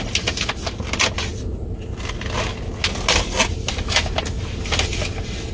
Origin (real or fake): real